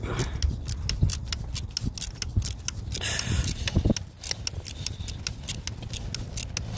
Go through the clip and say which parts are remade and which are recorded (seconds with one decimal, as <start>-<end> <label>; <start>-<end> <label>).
0.0-6.8 recorded

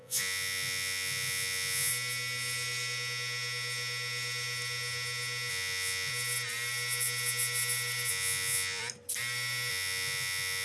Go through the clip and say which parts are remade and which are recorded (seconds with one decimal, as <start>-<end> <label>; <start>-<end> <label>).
0.0-1.9 remade; 1.9-5.5 recorded; 5.5-6.1 remade; 6.1-8.1 recorded; 8.1-8.8 remade; 8.8-9.7 recorded; 9.7-10.6 remade

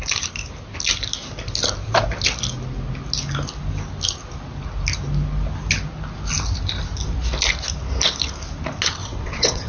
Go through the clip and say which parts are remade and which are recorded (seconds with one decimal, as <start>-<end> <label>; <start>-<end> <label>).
0.0-9.0 recorded; 9.0-9.7 remade

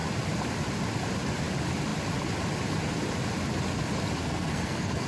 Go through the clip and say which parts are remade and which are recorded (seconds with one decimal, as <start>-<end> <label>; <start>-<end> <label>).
0.0-4.2 recorded; 4.2-5.1 remade

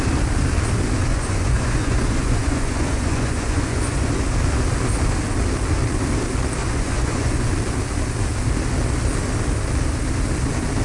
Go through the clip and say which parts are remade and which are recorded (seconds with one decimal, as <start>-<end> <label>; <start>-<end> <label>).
0.0-1.1 recorded; 1.1-4.1 remade; 4.1-6.6 recorded; 6.6-7.5 remade; 7.5-10.8 recorded

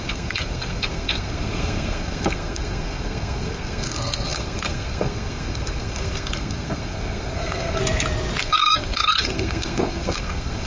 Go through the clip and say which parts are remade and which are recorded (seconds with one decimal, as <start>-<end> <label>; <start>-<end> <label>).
0.0-7.8 remade; 7.8-8.4 recorded; 8.4-10.7 remade